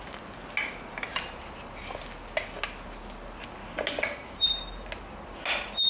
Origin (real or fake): real